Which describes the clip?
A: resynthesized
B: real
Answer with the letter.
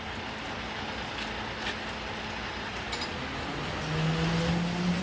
B